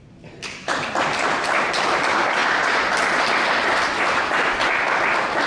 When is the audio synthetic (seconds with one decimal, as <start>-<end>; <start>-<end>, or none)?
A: none